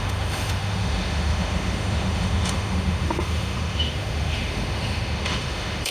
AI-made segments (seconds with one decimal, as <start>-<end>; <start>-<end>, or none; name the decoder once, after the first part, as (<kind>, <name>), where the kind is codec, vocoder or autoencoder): 0.0-5.9 (autoencoder, DAC-VAE)